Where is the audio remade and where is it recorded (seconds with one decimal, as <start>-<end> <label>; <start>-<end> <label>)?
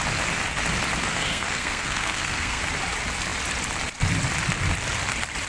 0.0-1.1 recorded; 1.1-2.6 remade; 2.6-5.5 recorded